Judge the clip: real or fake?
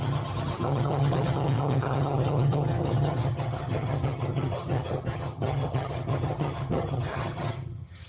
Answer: fake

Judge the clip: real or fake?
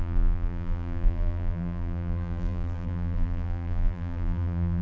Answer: fake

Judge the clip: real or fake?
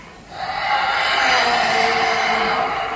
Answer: real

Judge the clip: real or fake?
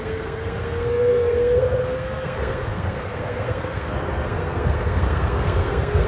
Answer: fake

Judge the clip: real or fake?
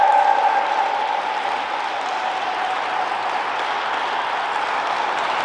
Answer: real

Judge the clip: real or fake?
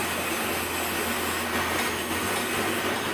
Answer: real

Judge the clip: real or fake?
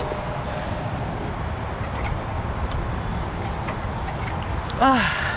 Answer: real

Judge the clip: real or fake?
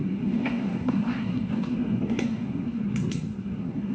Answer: fake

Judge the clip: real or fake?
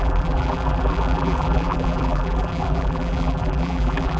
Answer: fake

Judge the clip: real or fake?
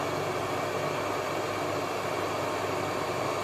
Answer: real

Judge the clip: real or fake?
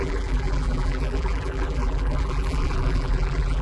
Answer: fake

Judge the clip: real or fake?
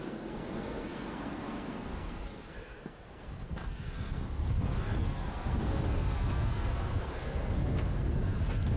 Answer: fake